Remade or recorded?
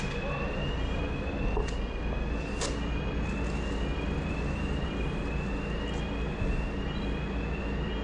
recorded